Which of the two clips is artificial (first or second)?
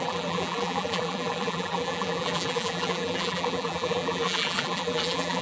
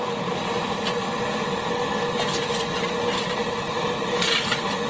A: first